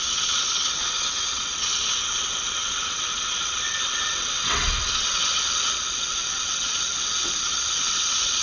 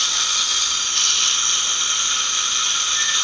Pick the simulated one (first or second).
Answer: first